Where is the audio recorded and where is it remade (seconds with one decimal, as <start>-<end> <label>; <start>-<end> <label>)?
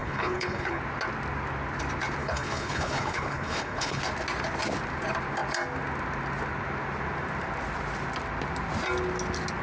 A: 0.0-0.8 remade; 0.8-2.2 recorded; 2.2-4.0 remade; 4.0-9.6 recorded